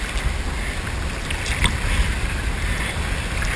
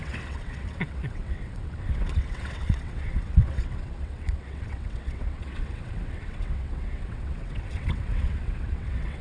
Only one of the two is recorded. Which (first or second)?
first